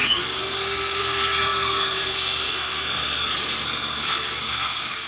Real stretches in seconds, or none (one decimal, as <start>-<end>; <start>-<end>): none

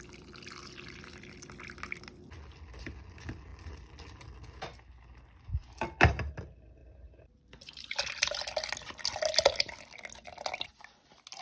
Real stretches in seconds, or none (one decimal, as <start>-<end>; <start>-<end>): 0.0-6.8; 8.4-11.4

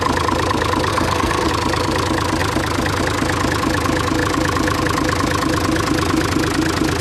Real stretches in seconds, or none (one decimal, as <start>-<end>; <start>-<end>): 0.0-0.9; 1.5-7.0

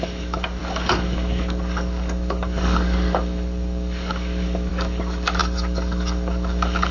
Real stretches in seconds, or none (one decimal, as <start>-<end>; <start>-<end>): none

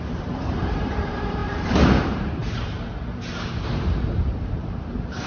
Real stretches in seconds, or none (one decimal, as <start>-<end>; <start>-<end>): 2.4-4.4